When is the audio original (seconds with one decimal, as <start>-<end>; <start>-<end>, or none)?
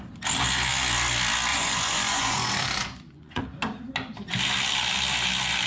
0.0-1.5; 3.4-5.7